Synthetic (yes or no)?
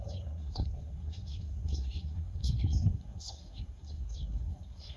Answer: yes